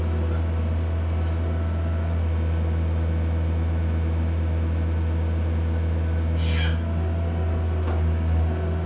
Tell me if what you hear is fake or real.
real